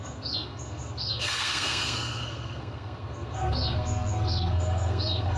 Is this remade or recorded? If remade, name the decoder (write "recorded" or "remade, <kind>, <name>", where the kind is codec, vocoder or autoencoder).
remade, codec, SNAC